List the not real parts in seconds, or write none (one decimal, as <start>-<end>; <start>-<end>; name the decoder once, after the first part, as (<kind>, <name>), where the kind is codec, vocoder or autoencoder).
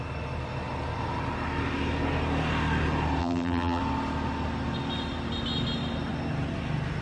3.2-3.8 (vocoder, BigVGAN v2)